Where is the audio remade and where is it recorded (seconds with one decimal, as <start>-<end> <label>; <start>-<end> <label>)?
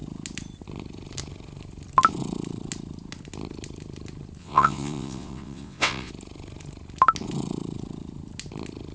0.0-4.4 recorded; 4.4-6.1 remade; 6.1-8.9 recorded